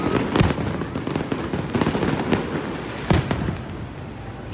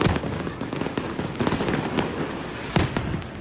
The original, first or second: first